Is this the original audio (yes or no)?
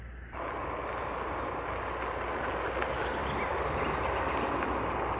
yes